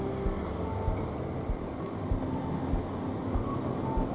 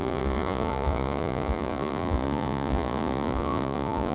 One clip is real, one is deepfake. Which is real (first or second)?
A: first